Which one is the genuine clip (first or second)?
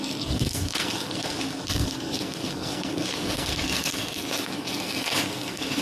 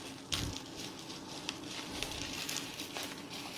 second